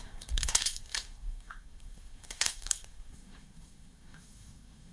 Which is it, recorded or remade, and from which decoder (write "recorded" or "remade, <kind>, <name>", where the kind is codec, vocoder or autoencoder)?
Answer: remade, codec, SNAC